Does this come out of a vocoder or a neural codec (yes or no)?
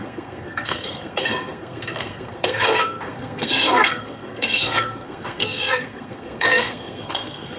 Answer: yes